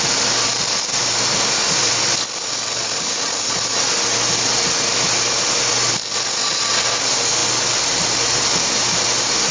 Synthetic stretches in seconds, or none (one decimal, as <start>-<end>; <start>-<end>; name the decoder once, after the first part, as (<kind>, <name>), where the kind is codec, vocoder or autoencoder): none

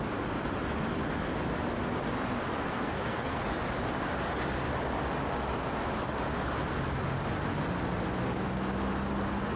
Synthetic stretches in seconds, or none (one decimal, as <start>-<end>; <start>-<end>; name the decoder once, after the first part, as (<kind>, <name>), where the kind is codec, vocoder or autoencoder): 2.5-3.4 (codec, SNAC)

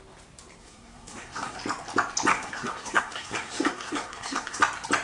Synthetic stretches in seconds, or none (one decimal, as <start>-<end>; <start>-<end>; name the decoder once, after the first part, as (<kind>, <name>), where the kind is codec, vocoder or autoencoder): 0.6-1.6 (codec, SNAC); 2.3-4.6

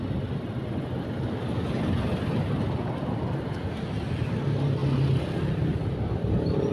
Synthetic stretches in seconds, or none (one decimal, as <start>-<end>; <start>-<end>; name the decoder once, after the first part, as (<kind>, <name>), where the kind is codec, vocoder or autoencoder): none

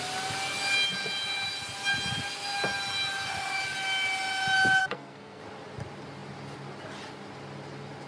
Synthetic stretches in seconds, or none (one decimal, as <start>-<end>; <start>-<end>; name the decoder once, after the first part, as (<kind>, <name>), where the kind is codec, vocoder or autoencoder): 4.8-5.4 (codec, SNAC)

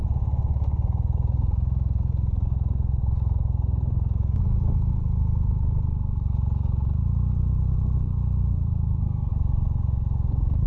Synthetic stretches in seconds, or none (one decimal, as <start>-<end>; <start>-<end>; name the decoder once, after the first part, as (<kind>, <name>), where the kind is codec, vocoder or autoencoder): 8.5-9.3 (codec, SNAC)

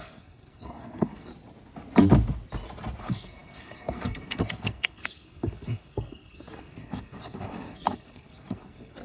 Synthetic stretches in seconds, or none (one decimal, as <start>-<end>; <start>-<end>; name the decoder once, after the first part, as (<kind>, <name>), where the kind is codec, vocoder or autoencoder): 0.0-1.3 (codec, SNAC); 3.0-9.0

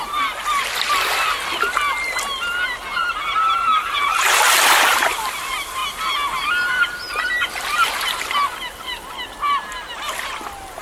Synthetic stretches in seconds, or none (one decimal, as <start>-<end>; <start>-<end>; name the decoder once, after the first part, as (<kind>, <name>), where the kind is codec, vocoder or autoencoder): none